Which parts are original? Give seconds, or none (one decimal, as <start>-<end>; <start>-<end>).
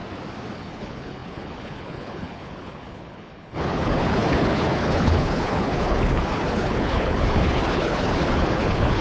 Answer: 0.0-0.5